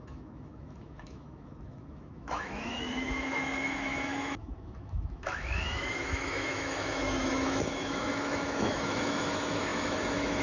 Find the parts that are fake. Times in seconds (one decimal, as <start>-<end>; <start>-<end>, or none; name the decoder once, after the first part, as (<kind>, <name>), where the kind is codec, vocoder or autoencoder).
0.0-10.4 (autoencoder, DAC-VAE)